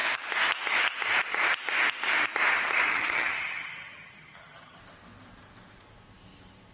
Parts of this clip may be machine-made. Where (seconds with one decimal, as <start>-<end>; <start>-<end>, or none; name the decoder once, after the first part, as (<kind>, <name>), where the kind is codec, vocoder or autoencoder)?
2.9-4.8 (vocoder, HiFi-GAN)